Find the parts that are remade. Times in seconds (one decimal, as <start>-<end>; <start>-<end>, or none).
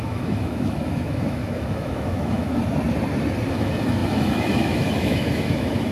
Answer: 0.0-2.6; 3.5-5.9